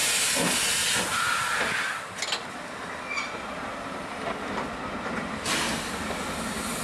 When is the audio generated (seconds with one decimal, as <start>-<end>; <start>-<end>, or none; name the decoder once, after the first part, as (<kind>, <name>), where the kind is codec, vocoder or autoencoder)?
none

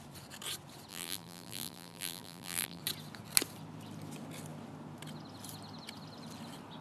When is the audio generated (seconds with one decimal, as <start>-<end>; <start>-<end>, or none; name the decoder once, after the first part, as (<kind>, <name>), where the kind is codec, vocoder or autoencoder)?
0.9-2.8 (vocoder, BigVGAN v2)